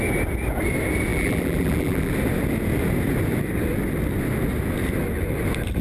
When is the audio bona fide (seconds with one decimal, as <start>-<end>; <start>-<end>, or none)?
0.0-1.1; 2.1-5.8